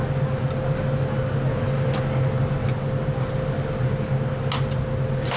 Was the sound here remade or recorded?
recorded